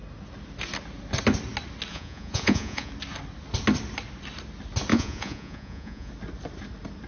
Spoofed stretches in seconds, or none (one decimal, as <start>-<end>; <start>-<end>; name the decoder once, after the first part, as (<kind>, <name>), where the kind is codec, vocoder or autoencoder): 1.9-2.9 (vocoder, Vocos); 4.9-6.1